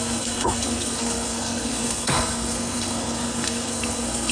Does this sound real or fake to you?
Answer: fake